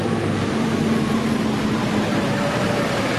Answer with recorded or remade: remade